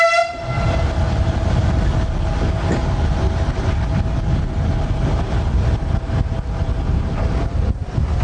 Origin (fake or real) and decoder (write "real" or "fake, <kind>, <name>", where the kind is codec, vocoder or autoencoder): real